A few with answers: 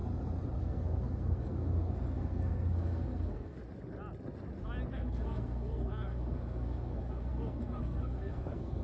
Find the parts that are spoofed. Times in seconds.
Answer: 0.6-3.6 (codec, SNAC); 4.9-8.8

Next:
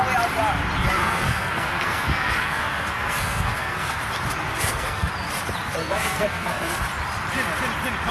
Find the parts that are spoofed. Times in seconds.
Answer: 1.0-4.0 (codec, SNAC); 4.5-5.1; 5.8-6.8

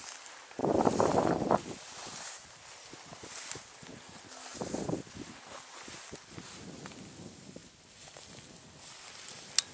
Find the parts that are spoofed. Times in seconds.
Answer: 0.6-2.3 (vocoder, BigVGAN v2)

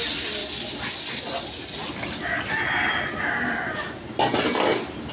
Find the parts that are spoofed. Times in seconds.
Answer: none

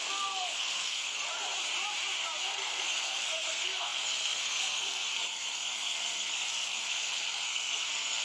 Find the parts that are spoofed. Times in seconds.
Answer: 0.0-1.3 (codec, SNAC); 2.4-8.2